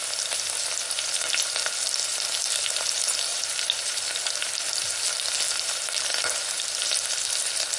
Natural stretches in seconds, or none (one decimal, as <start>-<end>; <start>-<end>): 0.0-3.3; 4.0-7.8